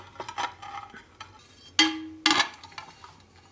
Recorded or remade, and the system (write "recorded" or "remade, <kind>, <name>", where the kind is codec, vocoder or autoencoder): recorded